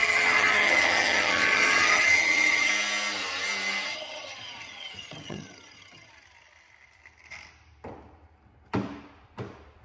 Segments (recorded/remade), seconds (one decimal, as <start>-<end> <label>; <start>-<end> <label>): 0.0-2.7 remade; 2.7-3.9 recorded; 3.9-6.1 remade; 6.1-9.8 recorded